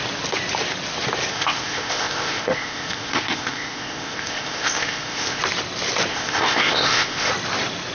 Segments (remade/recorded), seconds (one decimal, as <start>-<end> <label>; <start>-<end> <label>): 0.0-1.3 recorded; 1.3-5.4 remade; 5.4-6.1 recorded; 6.1-7.3 remade; 7.3-7.9 recorded